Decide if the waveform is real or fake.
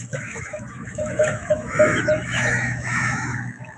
fake